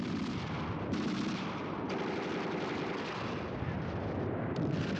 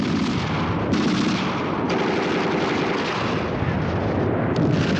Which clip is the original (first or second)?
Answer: second